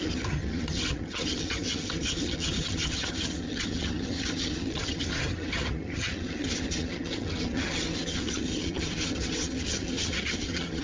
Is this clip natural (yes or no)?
no